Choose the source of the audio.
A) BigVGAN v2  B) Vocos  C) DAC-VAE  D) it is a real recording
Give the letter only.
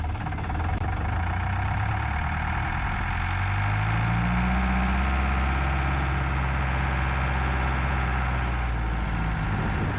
D